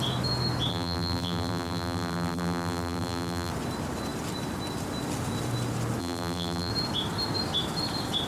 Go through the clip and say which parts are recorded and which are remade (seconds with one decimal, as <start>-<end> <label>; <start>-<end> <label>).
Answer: 0.0-0.7 recorded; 0.7-3.5 remade; 3.5-6.0 recorded; 6.0-6.7 remade; 6.7-8.3 recorded